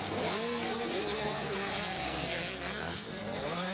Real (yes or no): no